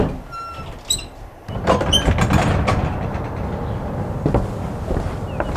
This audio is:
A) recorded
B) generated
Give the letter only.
A